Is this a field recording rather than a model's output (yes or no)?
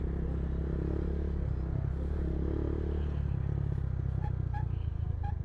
yes